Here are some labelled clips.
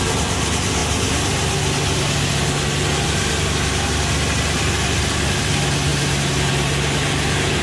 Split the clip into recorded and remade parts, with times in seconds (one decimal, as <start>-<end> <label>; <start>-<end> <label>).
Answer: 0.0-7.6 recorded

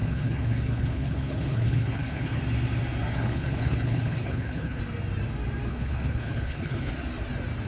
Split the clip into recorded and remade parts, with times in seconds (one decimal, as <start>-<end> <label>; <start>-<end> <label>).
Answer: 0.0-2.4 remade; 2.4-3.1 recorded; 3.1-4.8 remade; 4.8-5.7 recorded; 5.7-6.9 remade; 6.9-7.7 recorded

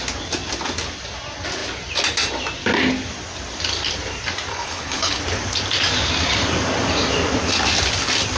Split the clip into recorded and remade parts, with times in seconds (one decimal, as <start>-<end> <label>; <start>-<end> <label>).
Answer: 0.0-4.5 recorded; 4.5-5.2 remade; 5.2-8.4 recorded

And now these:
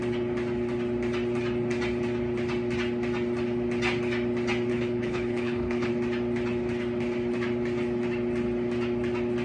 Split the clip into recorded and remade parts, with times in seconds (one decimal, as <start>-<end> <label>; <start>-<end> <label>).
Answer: 0.0-4.7 recorded; 4.7-5.9 remade; 5.9-9.4 recorded

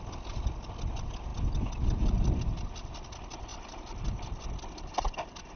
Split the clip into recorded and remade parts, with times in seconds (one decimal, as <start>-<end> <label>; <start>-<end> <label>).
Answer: 0.0-5.6 recorded

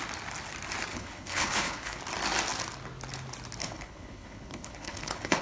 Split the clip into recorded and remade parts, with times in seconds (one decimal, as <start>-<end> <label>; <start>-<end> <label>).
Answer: 0.0-0.9 recorded; 0.9-2.0 remade; 2.0-3.6 recorded; 3.6-5.4 remade